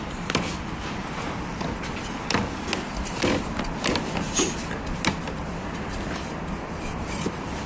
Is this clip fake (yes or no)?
no